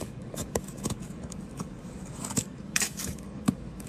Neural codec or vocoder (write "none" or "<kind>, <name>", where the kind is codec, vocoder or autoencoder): codec, DAC